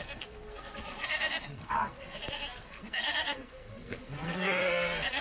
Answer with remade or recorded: remade